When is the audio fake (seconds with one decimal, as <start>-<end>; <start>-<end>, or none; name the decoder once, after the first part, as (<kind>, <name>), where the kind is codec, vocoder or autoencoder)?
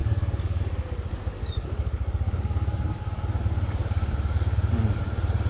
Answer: 0.0-0.6 (codec, DAC); 1.4-4.7